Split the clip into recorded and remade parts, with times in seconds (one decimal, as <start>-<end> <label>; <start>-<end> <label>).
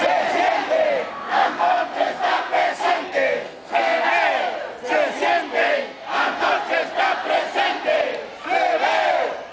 0.0-1.1 recorded; 1.1-4.1 remade; 4.1-5.6 recorded; 5.6-6.5 remade; 6.5-9.5 recorded